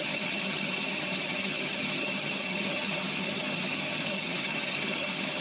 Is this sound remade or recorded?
remade